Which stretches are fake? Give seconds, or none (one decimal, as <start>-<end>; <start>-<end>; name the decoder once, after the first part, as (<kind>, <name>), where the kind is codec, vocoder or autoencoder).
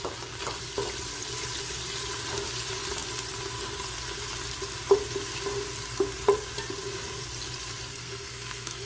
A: 7.9-8.9 (codec, SNAC)